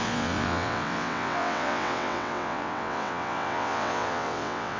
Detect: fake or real fake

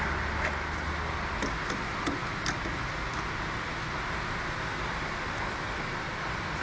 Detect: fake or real real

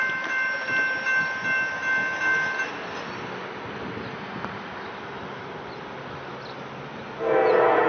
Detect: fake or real real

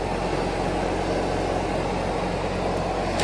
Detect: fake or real real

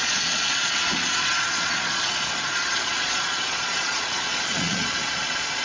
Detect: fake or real fake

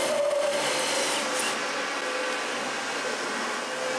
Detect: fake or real real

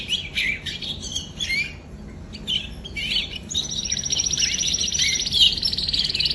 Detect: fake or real real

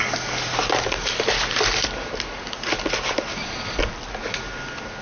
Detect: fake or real real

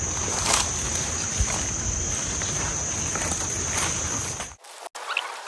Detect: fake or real real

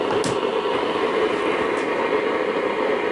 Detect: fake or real real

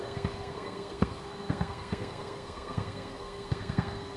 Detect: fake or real fake